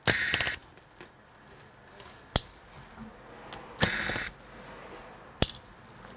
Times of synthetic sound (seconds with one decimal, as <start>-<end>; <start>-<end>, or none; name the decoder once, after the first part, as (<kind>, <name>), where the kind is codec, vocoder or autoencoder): none